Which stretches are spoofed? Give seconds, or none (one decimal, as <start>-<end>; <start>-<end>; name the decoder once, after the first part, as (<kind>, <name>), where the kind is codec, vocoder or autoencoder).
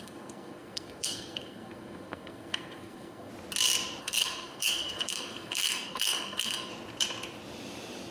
0.0-3.3 (codec, SNAC); 4.0-6.7